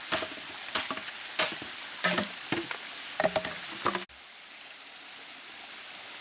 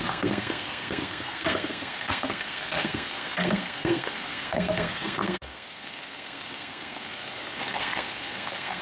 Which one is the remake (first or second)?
second